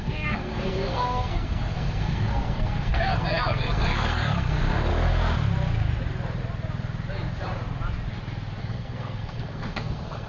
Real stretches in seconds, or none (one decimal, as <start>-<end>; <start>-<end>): 4.9-8.6